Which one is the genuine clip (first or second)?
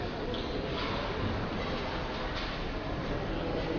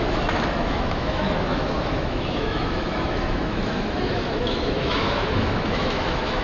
first